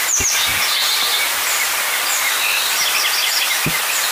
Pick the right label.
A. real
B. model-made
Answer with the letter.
A